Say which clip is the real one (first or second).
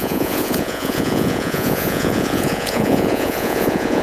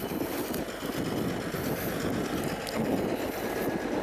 second